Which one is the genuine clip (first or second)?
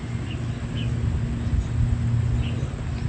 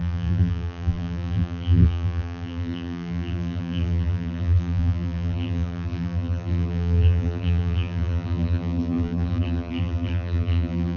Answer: first